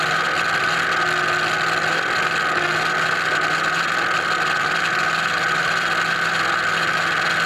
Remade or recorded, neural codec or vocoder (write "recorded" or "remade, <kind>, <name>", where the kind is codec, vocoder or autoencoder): recorded